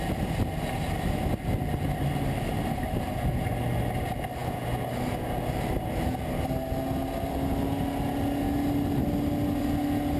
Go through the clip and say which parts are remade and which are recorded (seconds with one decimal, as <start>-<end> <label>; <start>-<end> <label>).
0.0-10.2 recorded